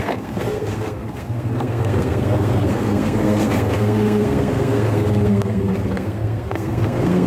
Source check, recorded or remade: remade